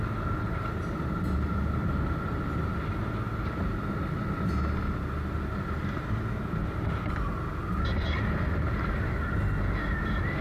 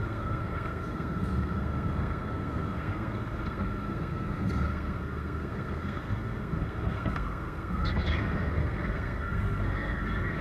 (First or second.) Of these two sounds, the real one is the first